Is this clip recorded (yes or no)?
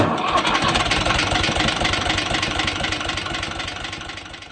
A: yes